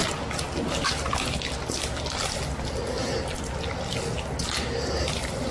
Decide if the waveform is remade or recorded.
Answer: recorded